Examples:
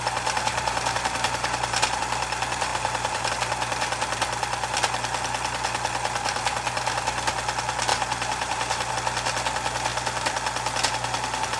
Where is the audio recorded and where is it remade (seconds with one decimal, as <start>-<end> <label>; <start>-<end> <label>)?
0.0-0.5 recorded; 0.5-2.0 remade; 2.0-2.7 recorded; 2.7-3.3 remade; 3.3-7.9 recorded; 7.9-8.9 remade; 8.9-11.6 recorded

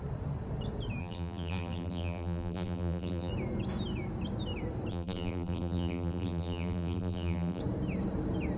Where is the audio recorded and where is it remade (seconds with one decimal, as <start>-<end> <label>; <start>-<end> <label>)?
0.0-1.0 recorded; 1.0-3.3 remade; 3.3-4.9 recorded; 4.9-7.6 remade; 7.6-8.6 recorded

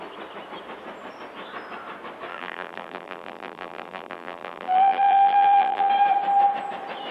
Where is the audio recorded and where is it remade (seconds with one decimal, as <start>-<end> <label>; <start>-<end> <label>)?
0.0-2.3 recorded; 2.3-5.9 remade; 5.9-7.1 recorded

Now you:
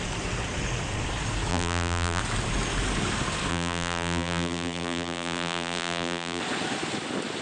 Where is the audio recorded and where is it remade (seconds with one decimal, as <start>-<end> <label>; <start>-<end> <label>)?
0.0-1.5 recorded; 1.5-2.2 remade; 2.2-3.5 recorded; 3.5-6.4 remade; 6.4-7.4 recorded